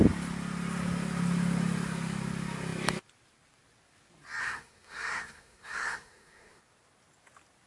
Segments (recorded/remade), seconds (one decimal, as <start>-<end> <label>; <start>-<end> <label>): 0.0-4.4 recorded; 4.4-6.6 remade; 6.6-7.7 recorded